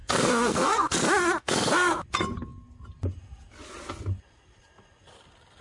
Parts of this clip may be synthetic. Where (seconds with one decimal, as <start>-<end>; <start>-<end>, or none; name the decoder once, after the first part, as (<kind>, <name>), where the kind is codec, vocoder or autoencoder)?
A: 0.0-1.0 (codec, SNAC); 1.4-2.0